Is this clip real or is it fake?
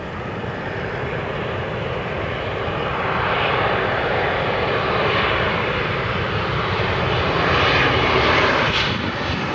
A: real